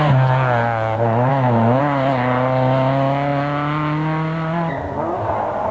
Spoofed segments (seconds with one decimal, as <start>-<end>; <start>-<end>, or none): 1.3-1.8